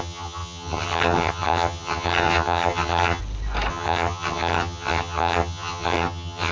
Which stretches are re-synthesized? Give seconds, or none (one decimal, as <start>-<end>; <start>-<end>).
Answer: 0.0-3.2; 3.7-6.5